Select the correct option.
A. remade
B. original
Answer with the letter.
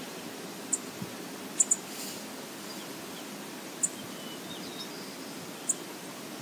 B